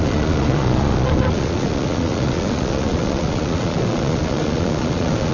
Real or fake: fake